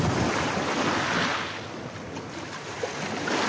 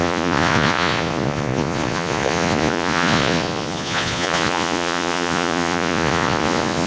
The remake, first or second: second